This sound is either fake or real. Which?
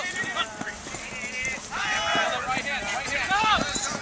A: real